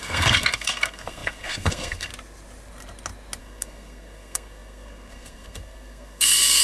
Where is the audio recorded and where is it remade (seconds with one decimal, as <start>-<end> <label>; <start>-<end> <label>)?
0.0-2.1 remade; 2.1-3.4 recorded; 3.4-6.6 remade